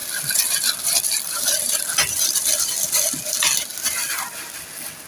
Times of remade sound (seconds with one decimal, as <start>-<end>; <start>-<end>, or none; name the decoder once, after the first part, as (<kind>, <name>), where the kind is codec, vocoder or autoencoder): 0.0-3.1 (vocoder, BigVGAN v2); 3.7-4.3